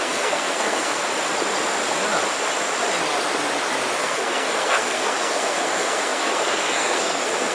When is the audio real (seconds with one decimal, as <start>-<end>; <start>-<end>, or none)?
1.0-4.0

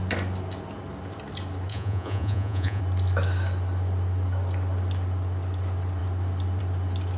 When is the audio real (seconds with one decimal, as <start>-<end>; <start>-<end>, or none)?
0.0-1.7; 2.8-7.2

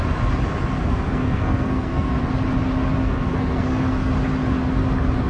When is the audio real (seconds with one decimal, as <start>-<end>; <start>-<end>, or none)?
0.0-0.8; 2.1-3.0; 4.1-5.3

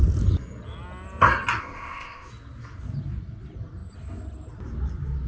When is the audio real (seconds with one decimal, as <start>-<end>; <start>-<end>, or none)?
0.0-1.6; 2.3-5.3

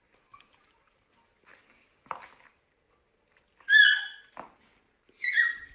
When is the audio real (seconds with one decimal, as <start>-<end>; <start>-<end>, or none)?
0.0-5.7